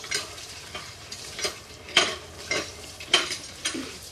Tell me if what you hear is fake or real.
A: fake